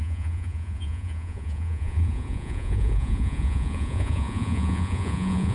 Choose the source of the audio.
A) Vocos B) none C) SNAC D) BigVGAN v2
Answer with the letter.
A